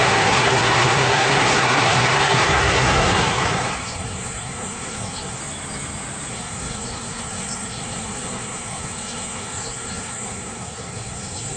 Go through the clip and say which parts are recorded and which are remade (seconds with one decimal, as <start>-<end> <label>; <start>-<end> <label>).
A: 0.0-5.4 remade; 5.4-6.3 recorded; 6.3-11.6 remade